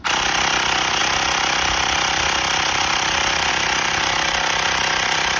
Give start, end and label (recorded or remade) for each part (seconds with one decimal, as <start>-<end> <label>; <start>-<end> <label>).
0.0-5.4 recorded